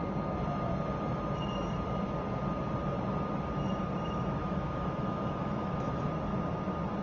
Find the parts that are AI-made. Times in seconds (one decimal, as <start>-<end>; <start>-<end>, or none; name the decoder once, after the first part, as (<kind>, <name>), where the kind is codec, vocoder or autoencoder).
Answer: 4.4-6.1 (autoencoder, DAC-VAE)